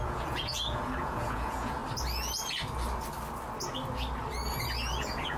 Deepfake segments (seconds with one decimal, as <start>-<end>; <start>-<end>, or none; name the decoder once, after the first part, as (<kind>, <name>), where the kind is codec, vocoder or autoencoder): 0.0-1.8 (vocoder, Vocos); 5.0-5.4